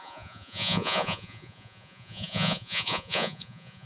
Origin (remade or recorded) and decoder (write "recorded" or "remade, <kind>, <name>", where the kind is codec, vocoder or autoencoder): remade, vocoder, Vocos